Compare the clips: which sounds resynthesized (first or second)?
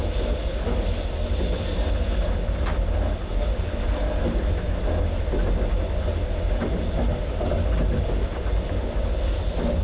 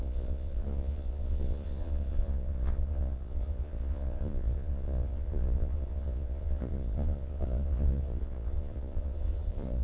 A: second